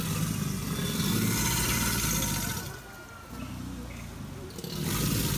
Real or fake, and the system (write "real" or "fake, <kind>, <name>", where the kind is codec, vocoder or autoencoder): real